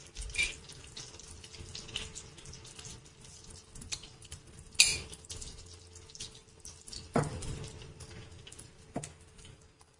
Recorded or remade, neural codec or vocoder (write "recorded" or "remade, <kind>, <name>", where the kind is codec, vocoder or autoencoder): recorded